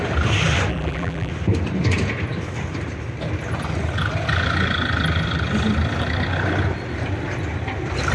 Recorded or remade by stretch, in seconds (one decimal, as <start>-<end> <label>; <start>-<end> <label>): 0.0-0.7 recorded; 0.7-1.3 remade; 1.3-8.1 recorded

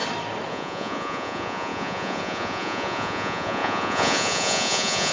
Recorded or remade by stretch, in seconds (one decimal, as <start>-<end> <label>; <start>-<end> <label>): 0.0-0.5 recorded; 0.5-5.1 remade

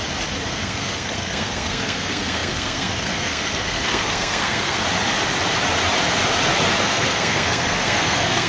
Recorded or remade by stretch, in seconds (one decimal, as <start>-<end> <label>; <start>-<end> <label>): 0.0-0.5 recorded; 0.5-4.8 remade; 4.8-6.8 recorded; 6.8-8.5 remade

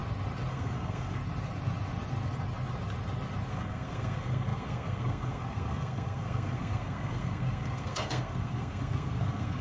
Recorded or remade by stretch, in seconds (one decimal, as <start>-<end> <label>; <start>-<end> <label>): 0.0-0.5 recorded; 0.5-1.2 remade; 1.2-3.5 recorded; 3.5-9.6 remade

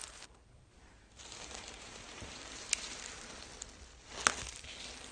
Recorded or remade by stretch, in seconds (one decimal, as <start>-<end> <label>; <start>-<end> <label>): 0.0-3.1 remade; 3.1-5.1 recorded